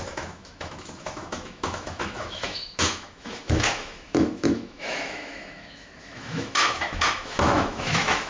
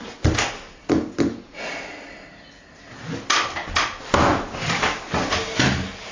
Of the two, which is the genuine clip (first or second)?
second